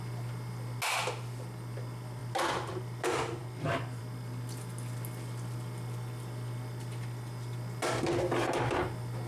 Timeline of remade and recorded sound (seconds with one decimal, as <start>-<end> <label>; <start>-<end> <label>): 0.0-9.3 recorded